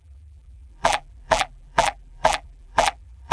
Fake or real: fake